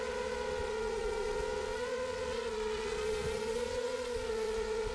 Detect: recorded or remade remade